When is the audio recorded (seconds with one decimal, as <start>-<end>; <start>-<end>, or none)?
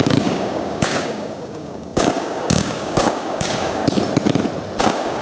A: 3.8-4.8